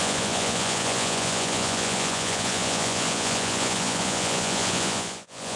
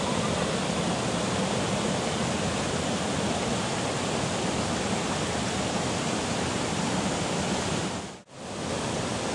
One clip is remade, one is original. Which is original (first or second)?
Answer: second